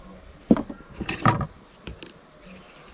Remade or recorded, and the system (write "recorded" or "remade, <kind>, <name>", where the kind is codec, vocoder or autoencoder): recorded